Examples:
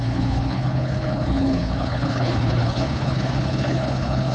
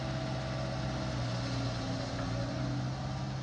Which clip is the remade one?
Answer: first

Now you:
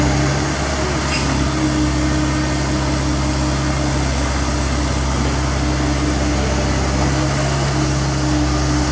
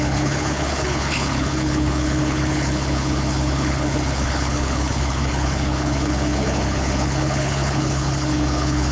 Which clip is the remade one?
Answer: second